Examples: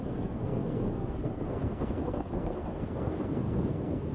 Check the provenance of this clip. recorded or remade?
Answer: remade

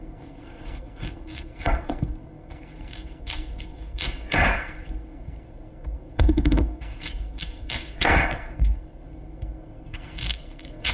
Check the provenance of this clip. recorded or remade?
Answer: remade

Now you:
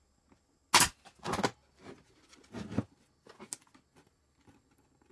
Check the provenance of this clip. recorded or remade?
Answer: recorded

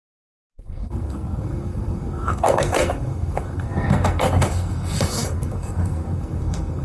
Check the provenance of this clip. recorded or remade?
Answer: remade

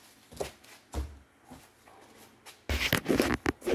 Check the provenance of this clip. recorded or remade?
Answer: recorded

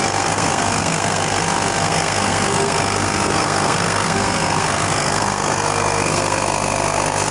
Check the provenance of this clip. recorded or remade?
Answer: remade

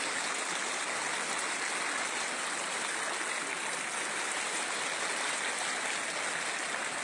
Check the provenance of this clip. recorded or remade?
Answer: recorded